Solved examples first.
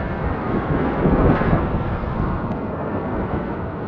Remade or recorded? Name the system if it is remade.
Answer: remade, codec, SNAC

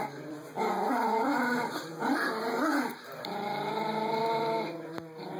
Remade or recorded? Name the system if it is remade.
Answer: recorded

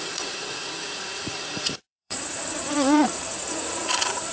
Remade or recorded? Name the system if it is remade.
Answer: remade, vocoder, Vocos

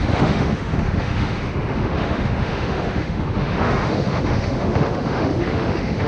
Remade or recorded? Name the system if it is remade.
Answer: remade, autoencoder, DAC-VAE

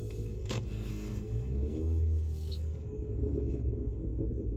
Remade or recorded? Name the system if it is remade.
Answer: remade, codec, SNAC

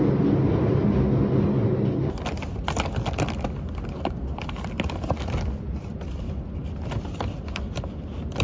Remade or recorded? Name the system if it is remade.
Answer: recorded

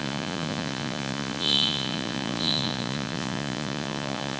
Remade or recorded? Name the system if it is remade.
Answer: remade, vocoder, Vocos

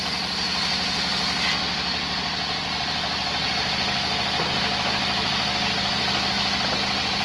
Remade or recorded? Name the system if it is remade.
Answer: recorded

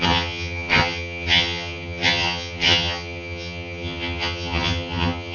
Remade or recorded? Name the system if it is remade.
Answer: remade, vocoder, HiFi-GAN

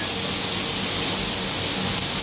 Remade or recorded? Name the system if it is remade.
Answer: recorded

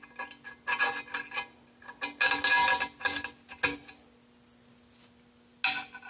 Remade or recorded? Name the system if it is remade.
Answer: recorded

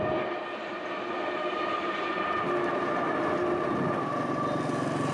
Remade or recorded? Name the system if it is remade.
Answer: recorded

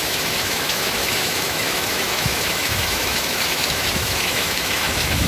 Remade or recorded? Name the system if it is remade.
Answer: remade, autoencoder, DAC-VAE